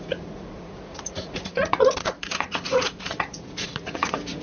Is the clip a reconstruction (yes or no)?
yes